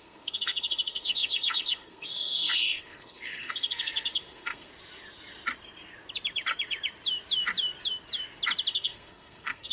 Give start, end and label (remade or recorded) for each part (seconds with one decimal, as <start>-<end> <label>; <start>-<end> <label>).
0.0-4.7 remade; 4.7-8.7 recorded; 8.7-9.7 remade